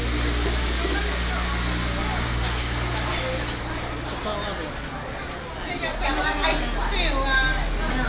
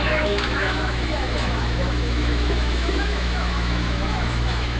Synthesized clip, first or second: second